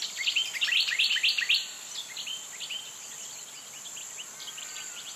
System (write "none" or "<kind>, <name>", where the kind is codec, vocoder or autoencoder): vocoder, BigVGAN v2